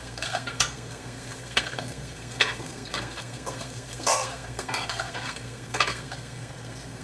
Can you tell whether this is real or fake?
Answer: fake